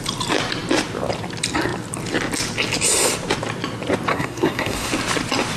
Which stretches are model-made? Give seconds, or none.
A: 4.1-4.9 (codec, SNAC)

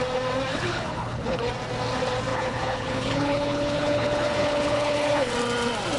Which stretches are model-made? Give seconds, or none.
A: 0.5-1.4 (codec, HILCodec); 2.3-5.3

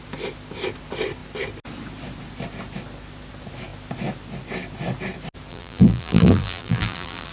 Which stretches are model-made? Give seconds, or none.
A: 5.5-7.3 (vocoder, BigVGAN v2)

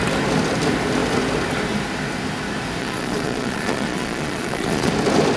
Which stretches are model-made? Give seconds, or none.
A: 2.8-4.9 (vocoder, Vocos)

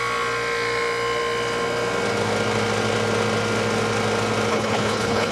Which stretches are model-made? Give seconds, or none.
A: 4.5-5.3 (codec, HILCodec)

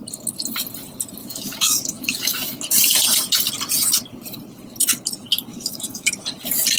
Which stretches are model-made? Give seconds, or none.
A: 1.2-2.6 (autoencoder, DAC-VAE); 5.5-6.1